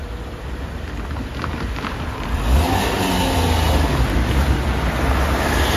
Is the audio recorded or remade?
recorded